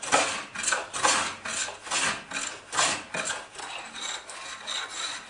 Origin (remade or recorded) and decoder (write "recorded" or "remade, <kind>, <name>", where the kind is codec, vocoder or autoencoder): recorded